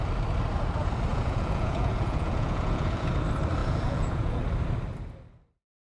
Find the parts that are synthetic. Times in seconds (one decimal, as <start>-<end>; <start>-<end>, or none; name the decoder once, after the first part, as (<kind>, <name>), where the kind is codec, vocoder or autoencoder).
1.1-3.1 (vocoder, Vocos); 3.6-4.4